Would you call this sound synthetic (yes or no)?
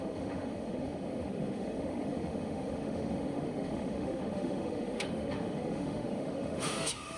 yes